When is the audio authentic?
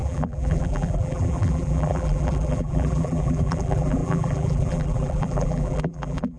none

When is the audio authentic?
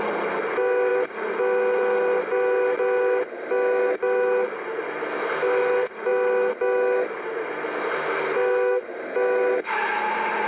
0.0-10.5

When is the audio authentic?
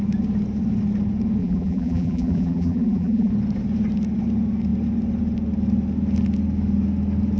0.0-1.4; 3.3-7.4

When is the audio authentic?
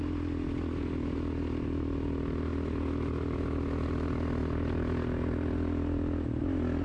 0.0-6.8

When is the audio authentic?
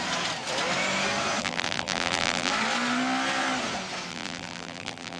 0.0-1.4; 2.5-4.1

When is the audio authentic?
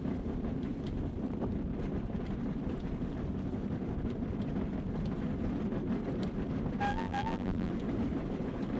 0.0-6.9; 7.7-8.8